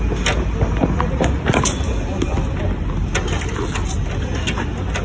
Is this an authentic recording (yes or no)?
yes